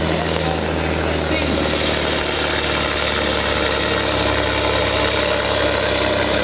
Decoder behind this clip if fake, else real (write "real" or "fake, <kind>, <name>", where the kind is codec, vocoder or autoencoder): real